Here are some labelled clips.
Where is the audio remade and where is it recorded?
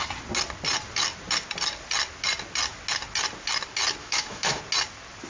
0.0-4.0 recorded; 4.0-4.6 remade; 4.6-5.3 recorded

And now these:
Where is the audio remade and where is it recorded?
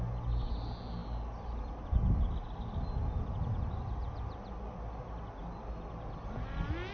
0.0-6.9 recorded